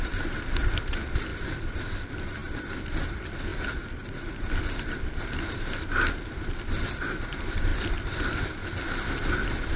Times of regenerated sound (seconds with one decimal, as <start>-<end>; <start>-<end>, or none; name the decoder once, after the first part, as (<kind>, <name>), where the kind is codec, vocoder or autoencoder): none